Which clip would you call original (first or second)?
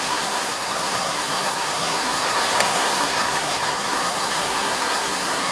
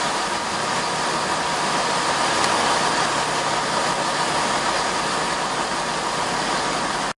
second